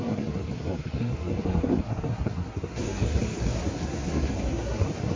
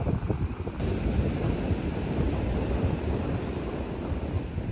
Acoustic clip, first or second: second